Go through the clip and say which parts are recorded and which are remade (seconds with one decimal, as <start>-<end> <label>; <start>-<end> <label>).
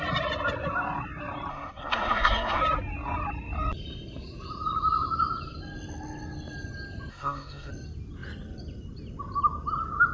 0.0-1.5 recorded; 1.5-2.6 remade; 2.6-7.1 recorded; 7.1-7.7 remade; 7.7-10.1 recorded